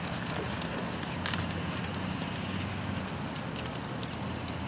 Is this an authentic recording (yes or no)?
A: yes